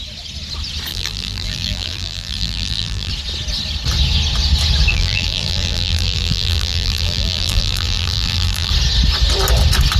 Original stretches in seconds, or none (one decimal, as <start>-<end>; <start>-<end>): 0.0-0.9; 3.1-4.9; 8.7-10.0